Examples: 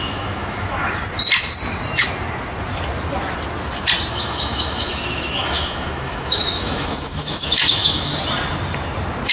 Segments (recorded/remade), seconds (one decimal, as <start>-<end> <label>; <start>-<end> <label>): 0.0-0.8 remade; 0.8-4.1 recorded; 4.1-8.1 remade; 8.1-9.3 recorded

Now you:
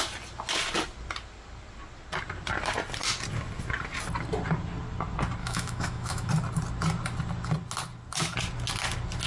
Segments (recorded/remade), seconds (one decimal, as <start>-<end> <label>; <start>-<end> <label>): 0.0-5.4 recorded; 5.4-6.3 remade; 6.3-9.3 recorded

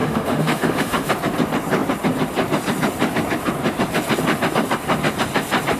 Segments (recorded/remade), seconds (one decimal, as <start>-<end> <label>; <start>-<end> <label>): 0.0-1.1 remade; 1.1-5.8 recorded

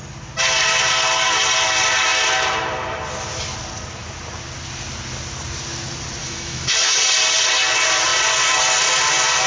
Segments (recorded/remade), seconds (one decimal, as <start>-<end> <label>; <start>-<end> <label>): 0.0-6.2 recorded; 6.2-7.0 remade; 7.0-9.5 recorded